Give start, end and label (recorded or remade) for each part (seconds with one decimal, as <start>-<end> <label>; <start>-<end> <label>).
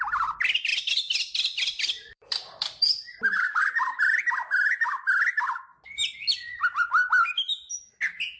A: 0.0-0.7 recorded; 0.7-3.6 remade; 3.6-8.4 recorded